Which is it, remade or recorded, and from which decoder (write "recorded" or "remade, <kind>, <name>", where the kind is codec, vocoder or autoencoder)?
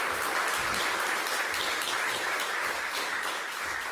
recorded